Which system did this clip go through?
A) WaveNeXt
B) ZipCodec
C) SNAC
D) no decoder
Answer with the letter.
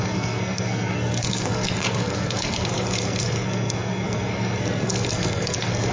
C